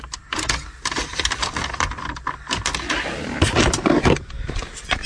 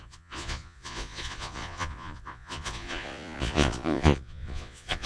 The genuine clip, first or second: first